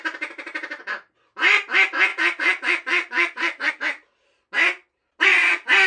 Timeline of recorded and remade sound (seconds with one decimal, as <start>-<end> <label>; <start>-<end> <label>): 0.0-2.1 recorded; 2.1-3.7 remade; 3.7-5.9 recorded

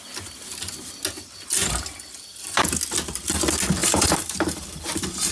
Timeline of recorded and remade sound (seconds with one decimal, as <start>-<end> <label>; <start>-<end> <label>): 0.0-3.8 recorded; 3.8-5.3 remade

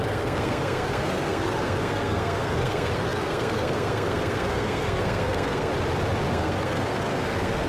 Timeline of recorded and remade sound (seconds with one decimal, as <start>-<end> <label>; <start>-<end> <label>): 0.0-5.7 remade; 5.7-6.3 recorded; 6.3-7.7 remade

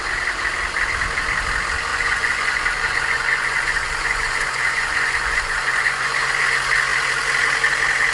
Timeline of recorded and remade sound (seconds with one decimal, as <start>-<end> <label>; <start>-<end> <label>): 0.0-1.9 recorded; 1.9-6.4 remade; 6.4-8.1 recorded

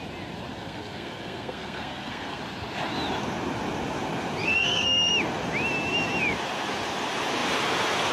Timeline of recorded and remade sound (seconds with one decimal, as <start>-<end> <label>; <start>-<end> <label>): 0.0-0.5 recorded; 0.5-2.4 remade; 2.4-4.4 recorded; 4.4-5.1 remade; 5.1-8.1 recorded

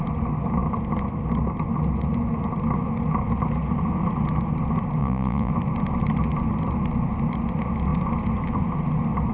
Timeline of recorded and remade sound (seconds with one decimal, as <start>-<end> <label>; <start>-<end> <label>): 0.0-5.0 recorded; 5.0-5.5 remade; 5.5-9.3 recorded